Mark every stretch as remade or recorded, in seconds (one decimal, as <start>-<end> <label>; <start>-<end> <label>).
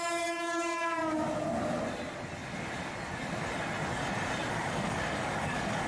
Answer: 0.0-1.0 remade; 1.0-4.5 recorded; 4.5-5.9 remade